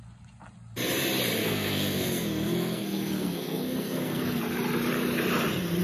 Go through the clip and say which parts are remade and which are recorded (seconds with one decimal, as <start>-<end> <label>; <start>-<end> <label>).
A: 0.0-1.4 recorded; 1.4-4.4 remade; 4.4-5.8 recorded

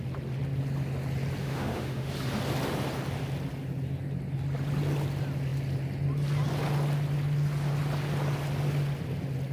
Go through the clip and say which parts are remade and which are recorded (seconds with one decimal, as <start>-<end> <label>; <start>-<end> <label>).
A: 0.0-1.4 recorded; 1.4-2.1 remade; 2.1-9.5 recorded

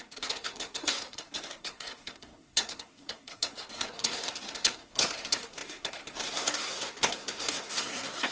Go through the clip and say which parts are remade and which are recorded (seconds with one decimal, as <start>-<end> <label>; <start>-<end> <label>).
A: 0.0-8.3 remade

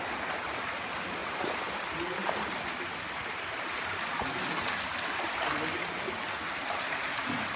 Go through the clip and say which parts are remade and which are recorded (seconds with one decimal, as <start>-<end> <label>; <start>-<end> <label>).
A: 0.0-7.6 recorded

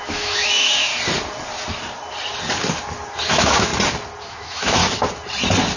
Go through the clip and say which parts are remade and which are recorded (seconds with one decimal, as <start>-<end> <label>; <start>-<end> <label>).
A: 0.0-0.9 remade; 0.9-3.3 recorded; 3.3-3.7 remade; 3.7-4.3 recorded; 4.3-4.8 remade; 4.8-5.8 recorded